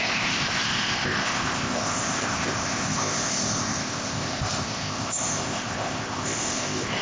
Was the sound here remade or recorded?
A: remade